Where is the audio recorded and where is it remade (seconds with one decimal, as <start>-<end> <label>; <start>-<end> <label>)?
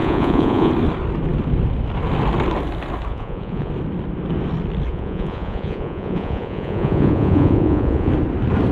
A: 0.0-0.7 remade; 0.7-3.1 recorded; 3.1-3.7 remade; 3.7-4.9 recorded; 4.9-8.1 remade; 8.1-8.7 recorded